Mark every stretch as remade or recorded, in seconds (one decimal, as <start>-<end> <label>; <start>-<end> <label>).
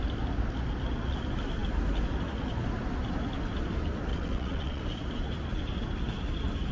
0.0-4.1 recorded; 4.1-4.8 remade; 4.8-6.7 recorded